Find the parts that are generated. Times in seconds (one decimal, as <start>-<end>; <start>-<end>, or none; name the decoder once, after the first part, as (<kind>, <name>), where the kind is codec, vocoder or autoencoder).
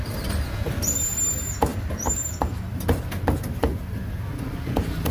none